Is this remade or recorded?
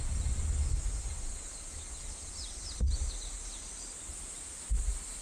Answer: recorded